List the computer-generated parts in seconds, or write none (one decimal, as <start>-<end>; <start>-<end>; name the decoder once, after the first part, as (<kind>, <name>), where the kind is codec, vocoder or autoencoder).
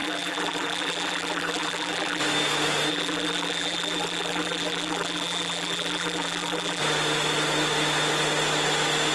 0.0-2.2 (vocoder, BigVGAN v2); 2.9-6.8